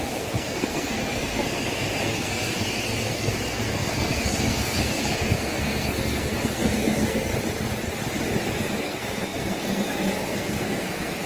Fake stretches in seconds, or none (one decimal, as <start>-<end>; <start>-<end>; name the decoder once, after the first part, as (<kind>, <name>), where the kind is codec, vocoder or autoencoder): 0.0-7.3 (codec, SNAC); 8.6-11.3